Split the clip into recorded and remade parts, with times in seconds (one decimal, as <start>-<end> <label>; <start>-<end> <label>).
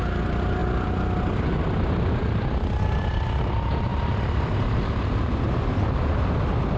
0.0-3.9 recorded; 3.9-5.4 remade; 5.4-6.8 recorded